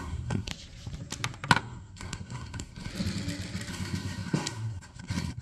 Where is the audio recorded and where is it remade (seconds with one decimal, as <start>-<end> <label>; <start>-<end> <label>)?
0.0-0.5 remade; 0.5-1.6 recorded; 1.6-2.9 remade; 2.9-3.7 recorded; 3.7-5.4 remade